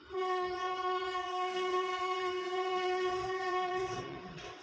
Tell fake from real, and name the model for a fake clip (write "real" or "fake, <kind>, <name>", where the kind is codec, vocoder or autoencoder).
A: fake, vocoder, WaveNeXt